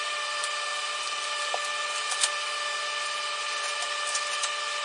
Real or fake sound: real